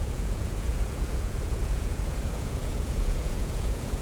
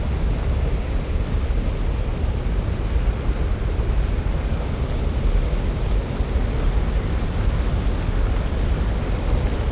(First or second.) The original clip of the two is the second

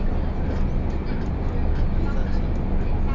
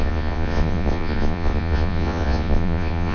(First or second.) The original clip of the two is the first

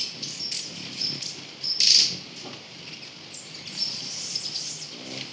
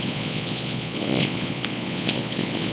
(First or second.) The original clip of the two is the first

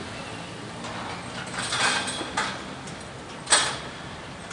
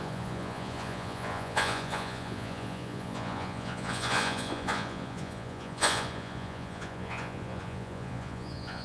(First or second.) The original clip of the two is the first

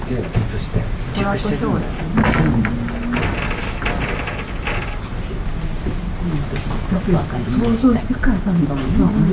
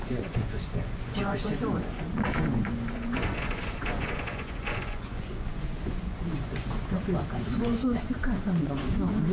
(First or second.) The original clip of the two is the first